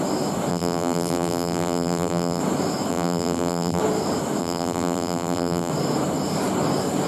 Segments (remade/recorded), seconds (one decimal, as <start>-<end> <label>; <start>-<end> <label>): 0.0-0.5 recorded; 0.5-2.4 remade; 2.4-2.9 recorded; 2.9-3.8 remade; 3.8-4.4 recorded; 4.4-5.7 remade; 5.7-7.1 recorded